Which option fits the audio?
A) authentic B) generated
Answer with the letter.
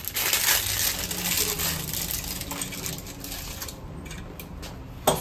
A